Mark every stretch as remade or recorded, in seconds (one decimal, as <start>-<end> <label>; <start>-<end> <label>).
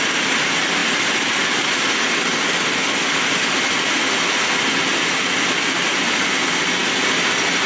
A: 0.0-7.7 recorded